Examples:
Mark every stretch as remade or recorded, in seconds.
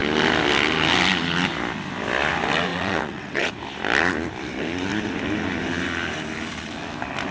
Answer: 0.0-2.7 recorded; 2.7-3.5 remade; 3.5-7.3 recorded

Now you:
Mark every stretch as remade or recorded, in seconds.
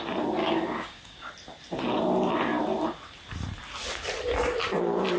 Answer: 0.0-0.4 recorded; 0.4-1.3 remade; 1.3-5.2 recorded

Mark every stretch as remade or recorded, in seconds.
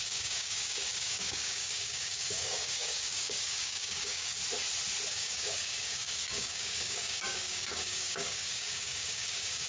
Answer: 0.0-4.4 remade; 4.4-5.1 recorded; 5.1-9.7 remade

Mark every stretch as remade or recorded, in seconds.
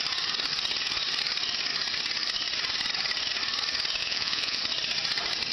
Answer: 0.0-4.0 recorded; 4.0-4.6 remade; 4.6-5.5 recorded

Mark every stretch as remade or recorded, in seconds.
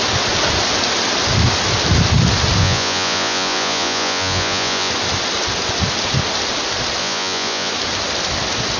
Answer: 0.0-2.6 recorded; 2.6-4.9 remade; 4.9-7.0 recorded; 7.0-7.7 remade; 7.7-8.8 recorded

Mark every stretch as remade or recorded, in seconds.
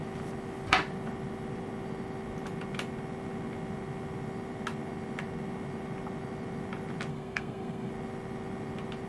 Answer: 0.0-7.1 recorded; 7.1-7.9 remade; 7.9-9.1 recorded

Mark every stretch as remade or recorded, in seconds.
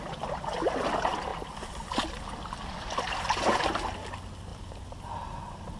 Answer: 0.0-5.8 recorded